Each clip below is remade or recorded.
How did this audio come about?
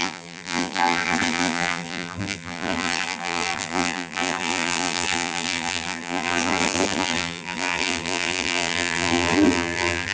remade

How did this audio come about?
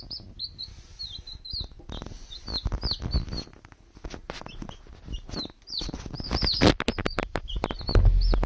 recorded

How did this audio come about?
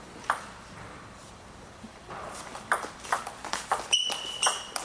remade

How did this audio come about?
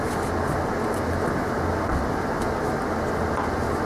recorded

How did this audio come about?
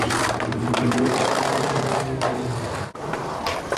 remade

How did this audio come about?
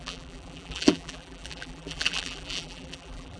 remade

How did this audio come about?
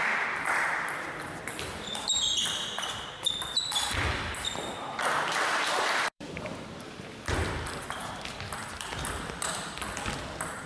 remade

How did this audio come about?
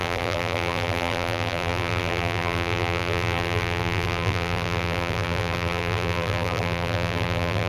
remade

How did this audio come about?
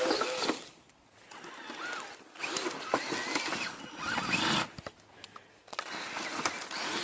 recorded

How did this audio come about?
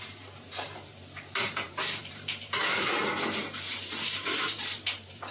remade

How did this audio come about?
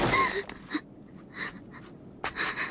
recorded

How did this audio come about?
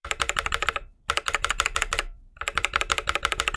remade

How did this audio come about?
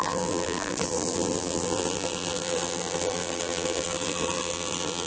remade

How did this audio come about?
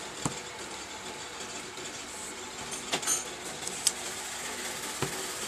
recorded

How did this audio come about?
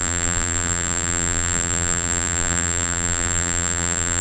remade